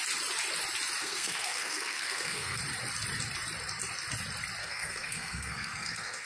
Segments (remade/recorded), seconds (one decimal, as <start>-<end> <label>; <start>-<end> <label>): 0.0-1.0 recorded; 1.0-2.6 remade; 2.6-4.6 recorded; 4.6-6.3 remade